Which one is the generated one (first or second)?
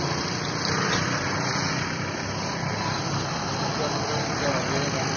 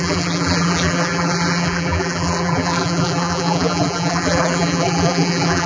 second